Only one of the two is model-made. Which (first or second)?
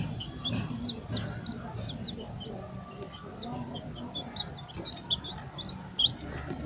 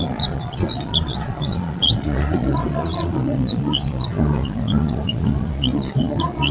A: second